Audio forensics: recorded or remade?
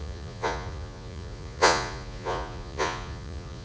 remade